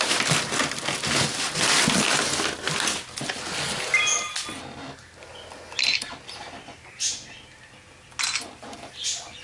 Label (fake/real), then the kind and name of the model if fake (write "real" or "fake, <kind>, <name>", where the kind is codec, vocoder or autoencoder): real